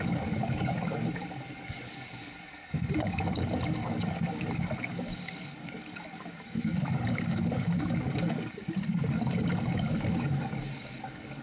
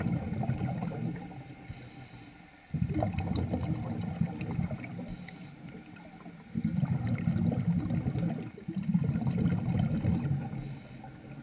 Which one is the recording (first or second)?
second